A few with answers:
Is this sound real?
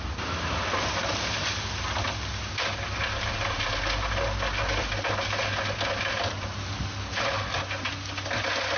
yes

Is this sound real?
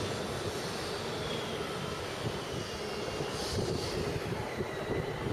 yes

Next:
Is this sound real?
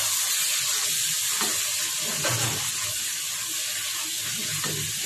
yes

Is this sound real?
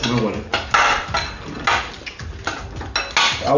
yes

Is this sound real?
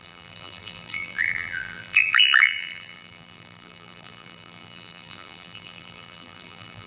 no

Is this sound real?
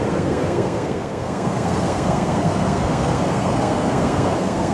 no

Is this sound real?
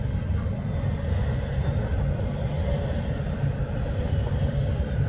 yes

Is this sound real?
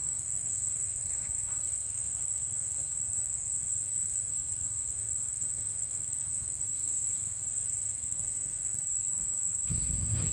no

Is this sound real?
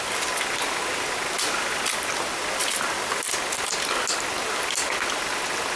yes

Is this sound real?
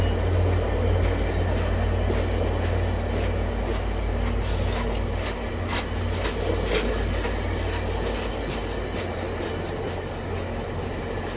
yes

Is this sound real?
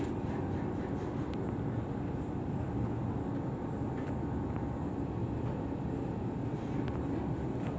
yes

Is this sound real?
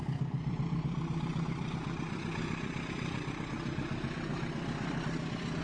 no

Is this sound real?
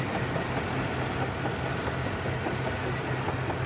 yes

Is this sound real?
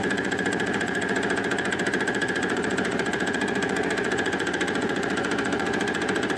no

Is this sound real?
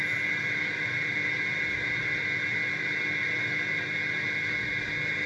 yes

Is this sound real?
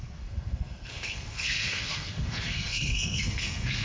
no